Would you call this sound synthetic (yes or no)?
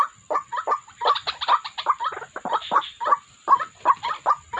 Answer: no